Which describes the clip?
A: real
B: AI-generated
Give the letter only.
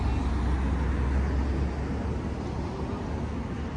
A